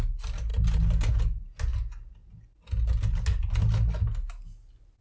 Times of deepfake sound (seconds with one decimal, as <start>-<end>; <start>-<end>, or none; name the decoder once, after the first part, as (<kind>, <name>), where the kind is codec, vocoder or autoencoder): none